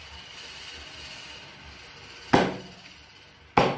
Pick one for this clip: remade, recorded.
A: recorded